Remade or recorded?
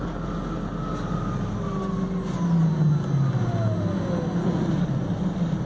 recorded